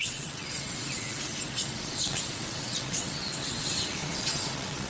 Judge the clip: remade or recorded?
remade